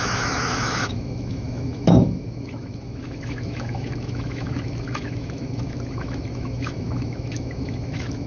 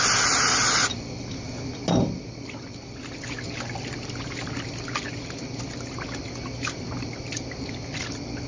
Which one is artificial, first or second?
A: first